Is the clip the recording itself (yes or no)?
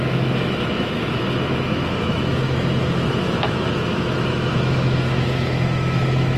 no